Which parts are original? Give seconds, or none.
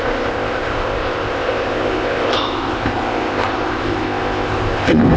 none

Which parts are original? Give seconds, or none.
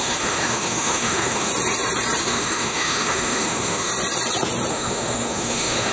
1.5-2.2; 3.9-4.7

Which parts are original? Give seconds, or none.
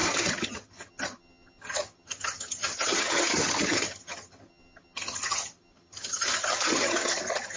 none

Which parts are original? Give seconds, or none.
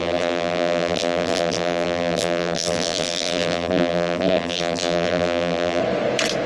5.8-6.5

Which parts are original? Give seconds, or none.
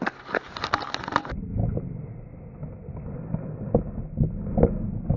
0.0-5.2